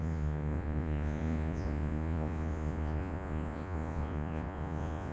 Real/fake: fake